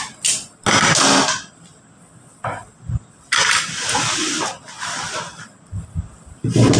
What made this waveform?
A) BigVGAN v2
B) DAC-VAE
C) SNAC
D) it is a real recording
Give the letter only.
D